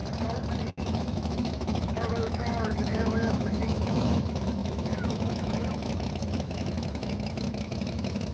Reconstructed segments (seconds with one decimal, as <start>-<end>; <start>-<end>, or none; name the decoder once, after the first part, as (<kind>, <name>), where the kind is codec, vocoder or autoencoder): 0.7-8.3 (autoencoder, DAC-VAE)